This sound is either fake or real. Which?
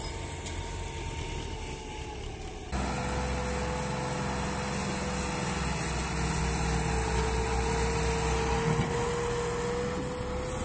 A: real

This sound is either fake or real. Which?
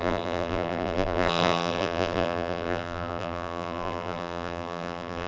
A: fake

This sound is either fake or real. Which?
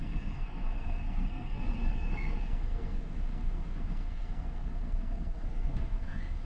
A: fake